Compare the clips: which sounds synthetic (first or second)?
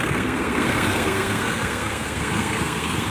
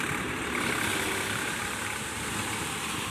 first